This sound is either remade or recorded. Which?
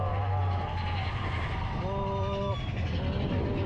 recorded